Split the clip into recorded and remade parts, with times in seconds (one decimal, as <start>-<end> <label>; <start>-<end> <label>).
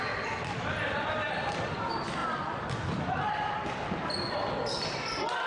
0.0-5.5 recorded